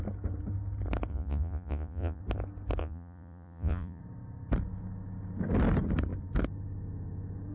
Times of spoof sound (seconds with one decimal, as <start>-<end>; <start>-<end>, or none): 1.1-2.2; 2.8-4.0